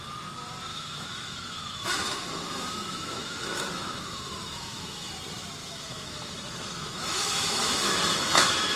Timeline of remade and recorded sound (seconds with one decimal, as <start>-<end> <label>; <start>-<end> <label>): 0.0-0.7 recorded; 0.7-5.1 remade; 5.1-5.6 recorded; 5.6-8.8 remade